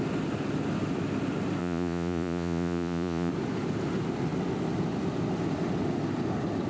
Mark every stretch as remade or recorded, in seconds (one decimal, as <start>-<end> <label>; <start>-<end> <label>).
0.0-1.6 recorded; 1.6-3.3 remade; 3.3-6.7 recorded